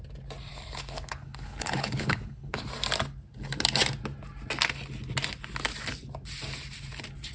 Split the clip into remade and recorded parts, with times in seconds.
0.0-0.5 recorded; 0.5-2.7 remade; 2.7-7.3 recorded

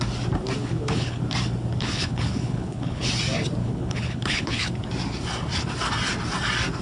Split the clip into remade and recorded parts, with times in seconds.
0.0-0.6 recorded; 0.6-1.2 remade; 1.2-1.7 recorded; 1.7-3.1 remade; 3.1-3.6 recorded; 3.6-4.7 remade; 4.7-6.8 recorded

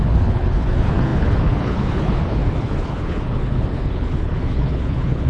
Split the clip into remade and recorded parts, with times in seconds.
0.0-5.3 remade

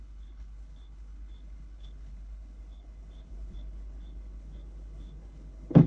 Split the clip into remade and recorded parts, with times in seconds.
0.0-5.9 remade